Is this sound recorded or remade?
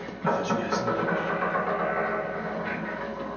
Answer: recorded